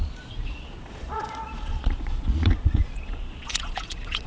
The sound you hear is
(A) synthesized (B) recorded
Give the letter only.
A